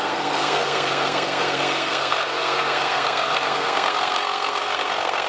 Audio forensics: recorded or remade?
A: remade